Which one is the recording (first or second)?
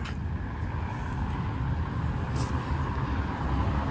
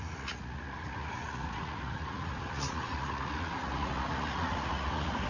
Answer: first